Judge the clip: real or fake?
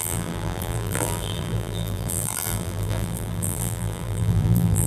fake